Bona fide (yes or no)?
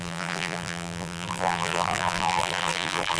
no